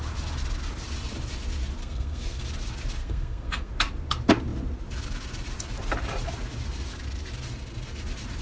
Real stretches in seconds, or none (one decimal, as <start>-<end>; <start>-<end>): 0.0-1.8; 2.4-3.0; 3.7-8.4